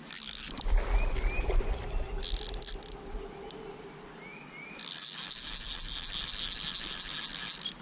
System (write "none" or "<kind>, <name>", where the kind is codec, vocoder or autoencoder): none